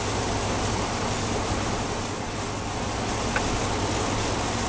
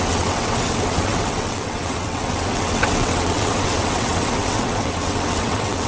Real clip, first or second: first